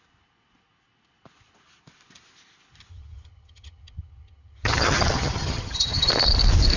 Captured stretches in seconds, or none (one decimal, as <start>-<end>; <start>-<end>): 0.0-2.9; 6.1-6.8